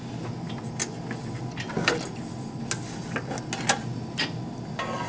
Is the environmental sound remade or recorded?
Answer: recorded